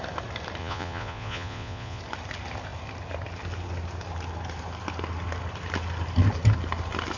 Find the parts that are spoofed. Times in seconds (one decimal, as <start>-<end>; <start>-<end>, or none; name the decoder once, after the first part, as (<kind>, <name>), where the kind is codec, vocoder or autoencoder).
0.6-2.0 (vocoder, Vocos)

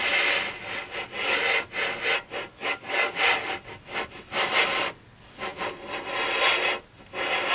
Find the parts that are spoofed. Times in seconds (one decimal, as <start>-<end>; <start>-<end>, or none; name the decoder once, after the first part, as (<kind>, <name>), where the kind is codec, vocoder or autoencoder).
2.5-3.2 (codec, DAC)

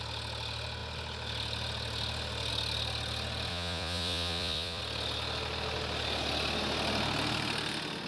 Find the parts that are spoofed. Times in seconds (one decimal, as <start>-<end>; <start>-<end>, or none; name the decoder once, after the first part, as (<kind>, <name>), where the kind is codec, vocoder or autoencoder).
3.5-4.8 (vocoder, Vocos)

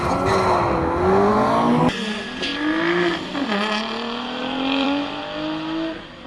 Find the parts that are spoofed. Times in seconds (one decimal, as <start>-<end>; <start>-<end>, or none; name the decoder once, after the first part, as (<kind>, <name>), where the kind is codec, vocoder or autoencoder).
4.4-5.2 (vocoder, BigVGAN v2)

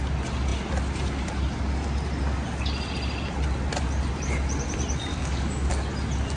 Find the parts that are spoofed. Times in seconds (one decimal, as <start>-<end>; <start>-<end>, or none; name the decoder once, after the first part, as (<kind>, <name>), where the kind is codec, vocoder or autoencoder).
5.1-5.7 (codec, DAC)

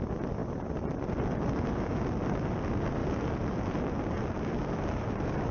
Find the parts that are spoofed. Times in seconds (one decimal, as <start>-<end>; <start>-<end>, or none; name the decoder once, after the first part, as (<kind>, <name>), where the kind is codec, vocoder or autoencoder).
none

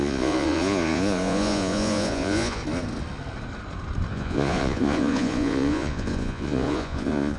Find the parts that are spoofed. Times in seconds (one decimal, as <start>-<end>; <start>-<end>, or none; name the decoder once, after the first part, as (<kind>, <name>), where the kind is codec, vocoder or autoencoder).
0.0-2.6 (vocoder, Vocos); 4.1-7.4